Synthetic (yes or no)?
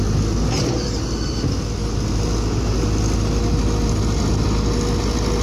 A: no